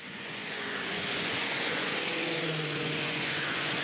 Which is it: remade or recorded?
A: remade